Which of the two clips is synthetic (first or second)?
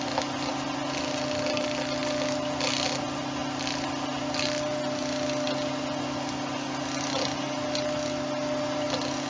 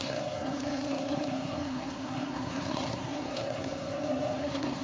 second